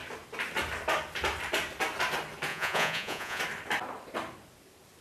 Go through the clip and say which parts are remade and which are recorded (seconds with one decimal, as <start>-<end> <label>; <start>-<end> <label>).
0.0-2.5 recorded; 2.5-3.4 remade; 3.4-5.0 recorded

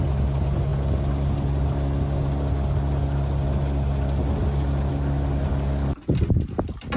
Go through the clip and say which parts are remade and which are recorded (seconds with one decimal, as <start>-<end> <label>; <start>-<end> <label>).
0.0-7.0 recorded

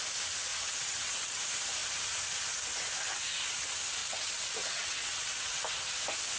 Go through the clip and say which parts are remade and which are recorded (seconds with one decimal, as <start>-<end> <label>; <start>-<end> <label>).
0.0-0.5 recorded; 0.5-1.4 remade; 1.4-4.0 recorded; 4.0-5.6 remade; 5.6-6.4 recorded